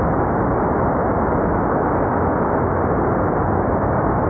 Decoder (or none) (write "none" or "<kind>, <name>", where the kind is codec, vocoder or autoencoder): none